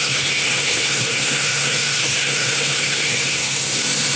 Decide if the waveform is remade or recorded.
remade